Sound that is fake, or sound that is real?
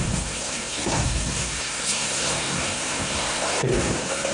fake